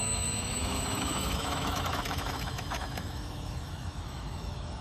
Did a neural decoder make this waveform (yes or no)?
yes